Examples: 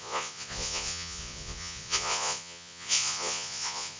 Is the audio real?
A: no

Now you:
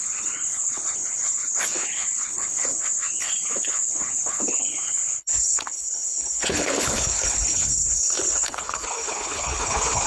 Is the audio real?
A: no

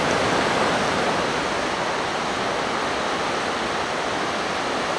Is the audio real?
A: yes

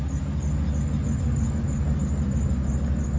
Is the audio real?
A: yes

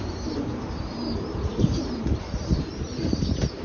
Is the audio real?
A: no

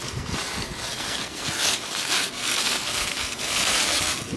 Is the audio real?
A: no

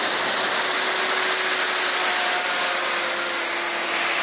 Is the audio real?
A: yes